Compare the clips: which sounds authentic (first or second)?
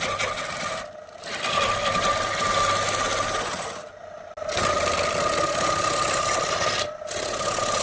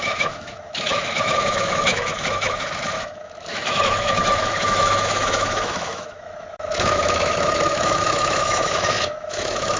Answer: first